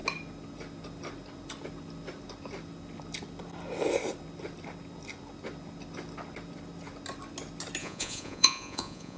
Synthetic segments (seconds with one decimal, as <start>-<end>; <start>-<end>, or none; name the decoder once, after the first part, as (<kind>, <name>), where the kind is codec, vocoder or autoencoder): 7.8-9.2 (vocoder, Vocos)